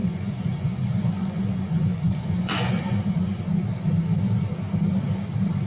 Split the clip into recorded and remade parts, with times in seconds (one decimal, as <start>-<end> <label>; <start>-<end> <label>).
0.0-3.4 remade; 3.4-5.7 recorded